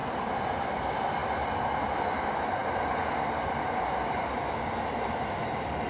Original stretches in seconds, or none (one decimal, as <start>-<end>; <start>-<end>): 0.0-5.9